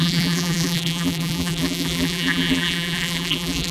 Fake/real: fake